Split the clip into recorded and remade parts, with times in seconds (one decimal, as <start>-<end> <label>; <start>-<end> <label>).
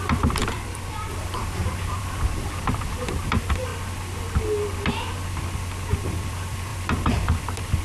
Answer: 0.0-3.7 remade; 3.7-5.9 recorded; 5.9-7.8 remade